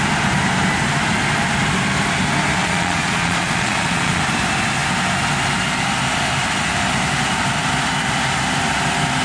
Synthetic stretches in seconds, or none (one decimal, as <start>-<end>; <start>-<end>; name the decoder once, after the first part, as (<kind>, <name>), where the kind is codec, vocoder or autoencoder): 2.6-4.2 (vocoder, Vocos)